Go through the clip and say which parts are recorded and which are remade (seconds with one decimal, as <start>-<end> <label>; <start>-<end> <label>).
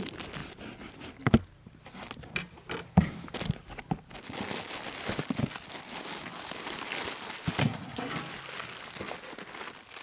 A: 0.0-7.6 recorded; 7.6-8.1 remade; 8.1-10.0 recorded